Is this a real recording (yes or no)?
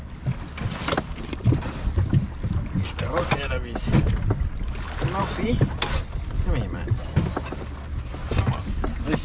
yes